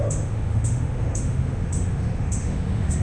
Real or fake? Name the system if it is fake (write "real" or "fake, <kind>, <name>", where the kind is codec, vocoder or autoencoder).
fake, autoencoder, DAC-VAE